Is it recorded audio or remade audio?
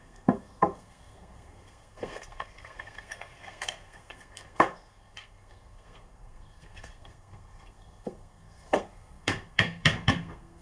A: remade